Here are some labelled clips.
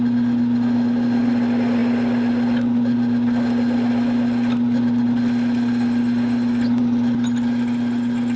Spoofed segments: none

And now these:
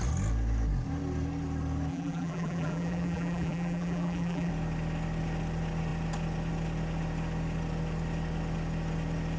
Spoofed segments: 1.9-4.5 (vocoder, BigVGAN v2)

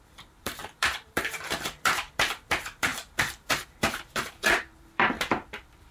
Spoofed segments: 0.0-2.9 (vocoder, BigVGAN v2); 3.5-5.9

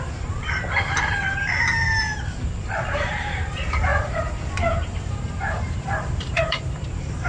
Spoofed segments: 2.0-3.5 (vocoder, BigVGAN v2); 3.9-7.3

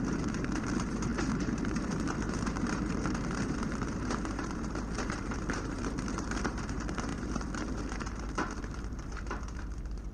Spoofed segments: 0.0-10.1 (vocoder, BigVGAN v2)